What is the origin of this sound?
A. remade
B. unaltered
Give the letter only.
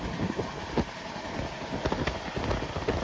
B